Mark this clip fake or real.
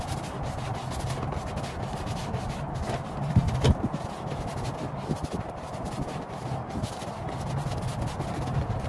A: real